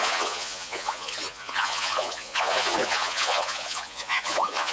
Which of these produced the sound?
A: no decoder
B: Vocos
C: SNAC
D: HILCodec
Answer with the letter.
B